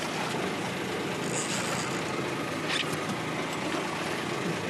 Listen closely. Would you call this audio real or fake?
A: real